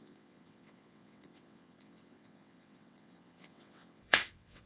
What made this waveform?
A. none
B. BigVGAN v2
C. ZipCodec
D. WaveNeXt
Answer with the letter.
D